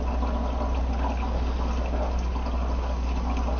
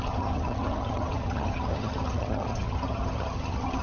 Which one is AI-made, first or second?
second